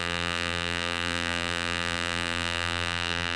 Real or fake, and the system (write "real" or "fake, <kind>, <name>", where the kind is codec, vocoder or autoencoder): fake, vocoder, BigVGAN v2